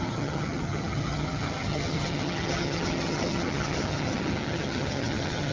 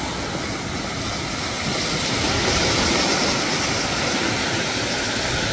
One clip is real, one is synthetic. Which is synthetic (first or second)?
first